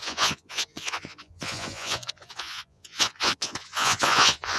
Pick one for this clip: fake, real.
fake